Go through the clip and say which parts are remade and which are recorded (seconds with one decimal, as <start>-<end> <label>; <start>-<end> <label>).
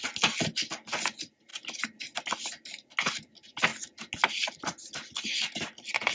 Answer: 0.0-6.1 recorded